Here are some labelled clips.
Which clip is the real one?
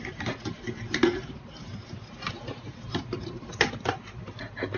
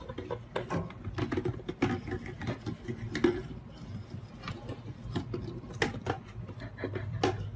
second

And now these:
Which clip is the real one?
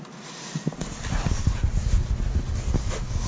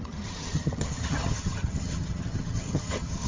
first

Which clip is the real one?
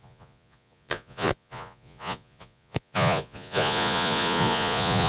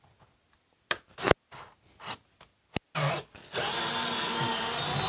second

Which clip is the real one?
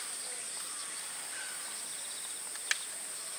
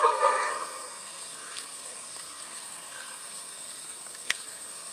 first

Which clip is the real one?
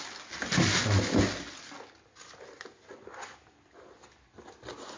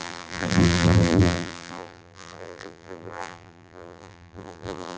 first